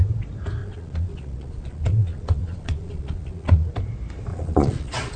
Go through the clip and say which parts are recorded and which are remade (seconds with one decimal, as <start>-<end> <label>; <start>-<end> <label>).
0.0-0.6 recorded; 0.6-3.7 remade; 3.7-4.3 recorded; 4.3-5.2 remade